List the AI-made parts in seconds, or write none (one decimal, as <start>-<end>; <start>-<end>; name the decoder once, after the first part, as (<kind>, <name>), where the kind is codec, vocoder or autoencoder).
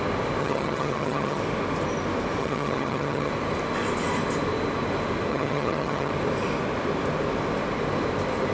0.4-1.4 (vocoder, HiFi-GAN); 2.4-3.3; 5.3-6.1